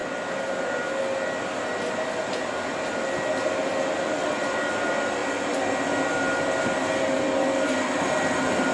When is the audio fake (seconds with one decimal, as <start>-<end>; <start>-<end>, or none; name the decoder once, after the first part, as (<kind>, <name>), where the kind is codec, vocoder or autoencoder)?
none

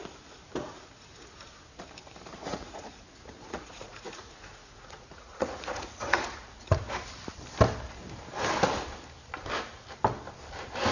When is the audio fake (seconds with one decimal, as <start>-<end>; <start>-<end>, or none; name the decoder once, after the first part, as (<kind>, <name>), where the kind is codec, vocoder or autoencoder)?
2.3-6.8 (vocoder, Vocos)

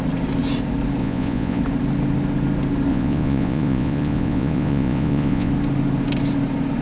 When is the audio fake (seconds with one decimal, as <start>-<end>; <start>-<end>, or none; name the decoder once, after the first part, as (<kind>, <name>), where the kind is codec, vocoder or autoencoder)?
1.0-1.6 (vocoder, Vocos); 2.9-5.5

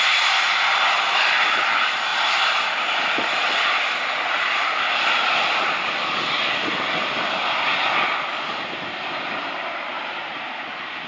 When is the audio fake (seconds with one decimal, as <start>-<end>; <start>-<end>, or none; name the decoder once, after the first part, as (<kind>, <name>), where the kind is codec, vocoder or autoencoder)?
none

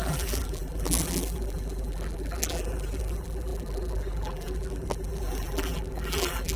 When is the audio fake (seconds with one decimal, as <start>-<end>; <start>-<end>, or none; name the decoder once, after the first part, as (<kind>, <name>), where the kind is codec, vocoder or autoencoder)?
0.0-6.6 (vocoder, BigVGAN v2)

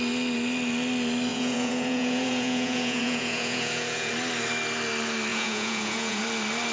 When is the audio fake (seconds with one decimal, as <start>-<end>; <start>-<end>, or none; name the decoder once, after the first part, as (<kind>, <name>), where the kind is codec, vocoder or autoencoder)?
1.3-4.1 (vocoder, Vocos); 5.3-6.2

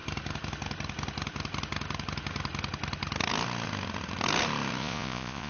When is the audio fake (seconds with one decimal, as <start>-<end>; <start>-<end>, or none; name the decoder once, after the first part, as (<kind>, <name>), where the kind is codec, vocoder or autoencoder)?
4.8-5.5 (vocoder, Vocos)